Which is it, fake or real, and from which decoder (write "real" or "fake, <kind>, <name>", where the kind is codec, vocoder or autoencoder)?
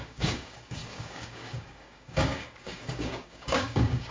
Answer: fake, codec, DAC